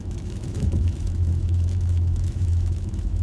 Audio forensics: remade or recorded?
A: remade